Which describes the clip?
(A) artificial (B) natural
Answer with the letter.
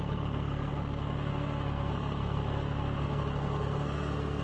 A